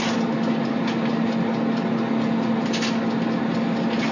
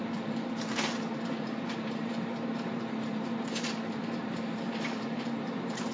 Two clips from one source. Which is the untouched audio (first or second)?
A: first